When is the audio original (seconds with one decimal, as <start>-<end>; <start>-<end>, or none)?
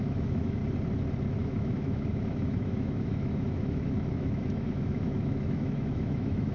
0.6-1.3